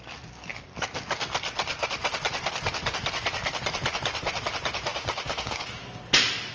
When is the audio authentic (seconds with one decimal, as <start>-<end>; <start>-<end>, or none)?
0.0-4.9; 6.0-6.5